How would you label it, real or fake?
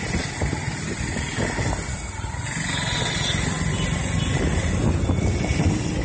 real